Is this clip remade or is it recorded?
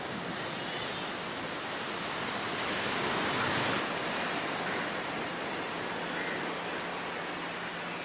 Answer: recorded